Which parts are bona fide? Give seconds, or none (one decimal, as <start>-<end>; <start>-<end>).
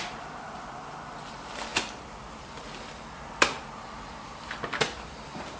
none